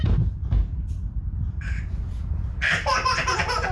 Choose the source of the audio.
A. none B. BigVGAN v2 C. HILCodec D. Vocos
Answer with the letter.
A